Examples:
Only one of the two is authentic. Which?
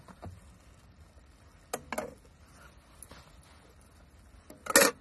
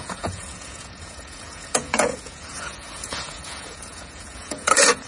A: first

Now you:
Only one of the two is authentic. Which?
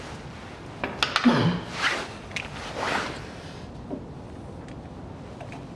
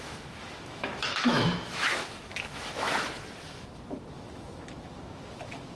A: first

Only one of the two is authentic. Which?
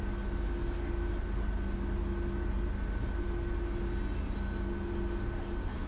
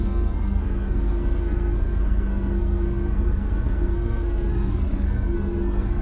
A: first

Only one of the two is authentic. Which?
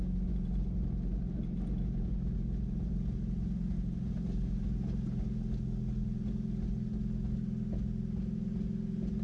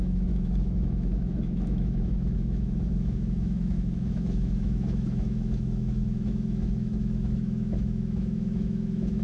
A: first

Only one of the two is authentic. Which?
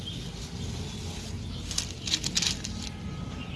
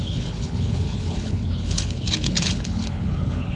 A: first